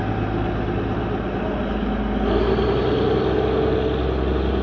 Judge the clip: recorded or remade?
recorded